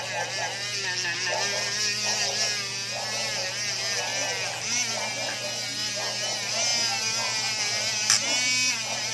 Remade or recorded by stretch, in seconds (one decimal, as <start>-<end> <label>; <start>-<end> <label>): 0.0-9.1 recorded